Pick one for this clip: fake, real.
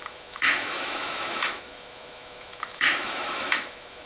fake